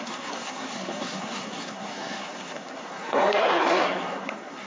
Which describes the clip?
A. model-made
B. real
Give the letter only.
A